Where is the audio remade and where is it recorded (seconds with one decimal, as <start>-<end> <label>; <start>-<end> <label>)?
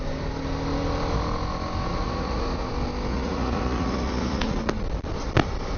0.0-1.9 recorded; 1.9-2.7 remade; 2.7-3.1 recorded; 3.1-4.6 remade; 4.6-5.8 recorded